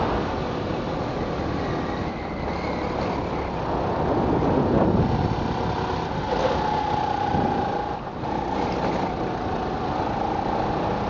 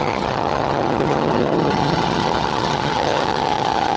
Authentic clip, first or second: first